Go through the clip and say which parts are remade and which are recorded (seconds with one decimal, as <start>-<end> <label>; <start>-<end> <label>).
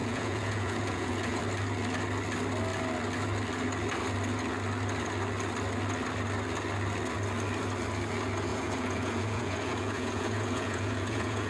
0.0-1.4 remade; 1.4-8.5 recorded; 8.5-11.5 remade